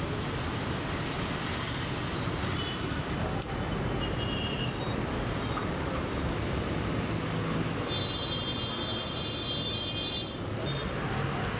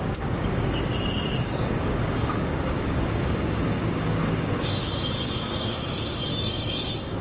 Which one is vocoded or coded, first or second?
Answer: second